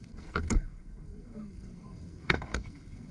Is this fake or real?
fake